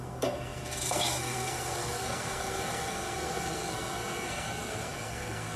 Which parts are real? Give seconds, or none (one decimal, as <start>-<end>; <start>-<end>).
none